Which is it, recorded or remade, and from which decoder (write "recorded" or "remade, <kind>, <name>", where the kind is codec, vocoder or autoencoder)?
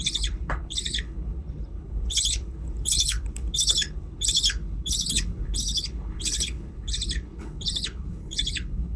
remade, codec, HILCodec